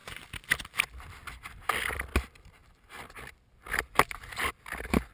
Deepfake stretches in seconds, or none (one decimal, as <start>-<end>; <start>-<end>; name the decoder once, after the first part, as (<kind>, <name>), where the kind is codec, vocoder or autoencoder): 0.0-0.8 (vocoder, BigVGAN v2)